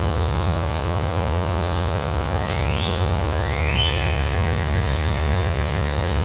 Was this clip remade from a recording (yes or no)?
yes